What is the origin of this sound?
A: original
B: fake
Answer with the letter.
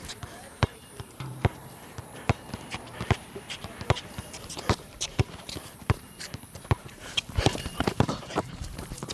B